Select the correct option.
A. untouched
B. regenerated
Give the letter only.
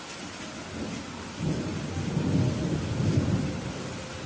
A